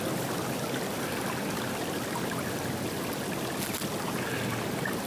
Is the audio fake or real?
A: real